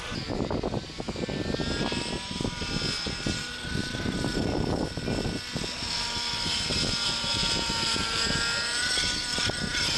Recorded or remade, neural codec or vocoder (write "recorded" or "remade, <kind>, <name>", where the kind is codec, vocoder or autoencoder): recorded